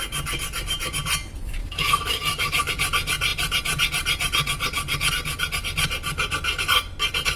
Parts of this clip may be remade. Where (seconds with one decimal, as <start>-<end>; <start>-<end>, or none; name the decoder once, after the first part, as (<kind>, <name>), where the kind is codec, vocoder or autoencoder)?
1.6-2.7 (autoencoder, DAC-VAE)